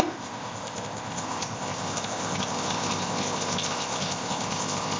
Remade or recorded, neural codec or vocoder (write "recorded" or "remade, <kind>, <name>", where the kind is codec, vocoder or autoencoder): remade, codec, ZipCodec